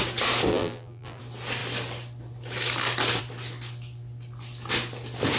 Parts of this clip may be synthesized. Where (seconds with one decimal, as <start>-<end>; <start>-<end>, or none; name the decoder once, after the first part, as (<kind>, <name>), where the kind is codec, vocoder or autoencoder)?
0.5-1.2 (vocoder, BigVGAN v2)